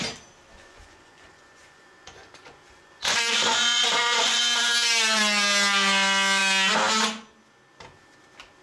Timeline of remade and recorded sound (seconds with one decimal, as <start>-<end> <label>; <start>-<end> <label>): 0.0-0.5 recorded; 0.5-4.4 remade; 4.4-8.6 recorded